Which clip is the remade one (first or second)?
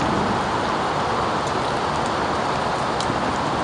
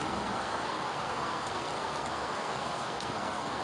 second